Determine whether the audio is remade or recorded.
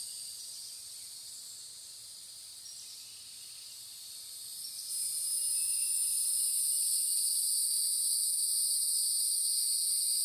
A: recorded